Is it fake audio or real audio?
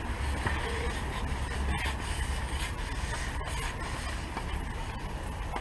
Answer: real